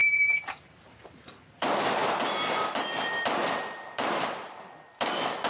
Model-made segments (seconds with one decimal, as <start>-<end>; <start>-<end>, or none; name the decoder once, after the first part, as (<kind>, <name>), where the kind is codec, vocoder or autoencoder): 0.0-1.3 (vocoder, BigVGAN v2); 2.0-2.8; 3.4-4.5